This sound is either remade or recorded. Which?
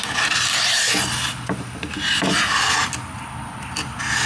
recorded